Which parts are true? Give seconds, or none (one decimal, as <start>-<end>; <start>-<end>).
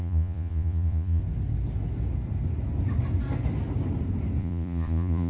1.2-4.4